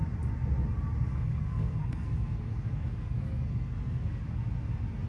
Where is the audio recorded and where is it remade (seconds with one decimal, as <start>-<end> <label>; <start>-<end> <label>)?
0.0-1.1 recorded; 1.1-4.2 remade; 4.2-5.1 recorded